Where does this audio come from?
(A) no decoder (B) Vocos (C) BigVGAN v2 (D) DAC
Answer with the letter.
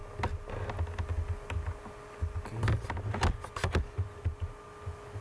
A